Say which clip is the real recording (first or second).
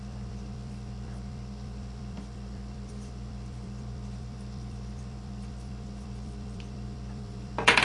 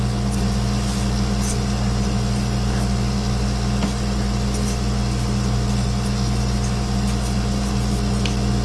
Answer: second